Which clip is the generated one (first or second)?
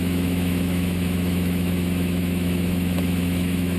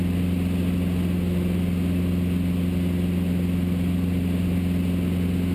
first